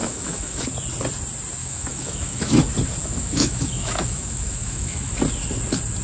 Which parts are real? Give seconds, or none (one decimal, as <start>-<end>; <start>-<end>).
0.6-1.6; 2.6-3.0; 5.1-6.0